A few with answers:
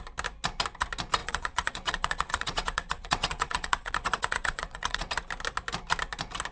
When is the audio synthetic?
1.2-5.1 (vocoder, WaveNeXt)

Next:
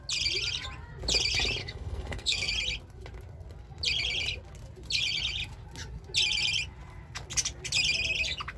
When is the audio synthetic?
1.6-2.5 (codec, SNAC)